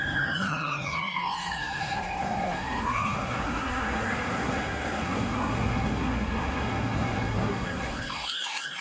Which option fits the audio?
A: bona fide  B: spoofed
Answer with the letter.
B